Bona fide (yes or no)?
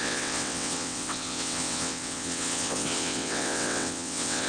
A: no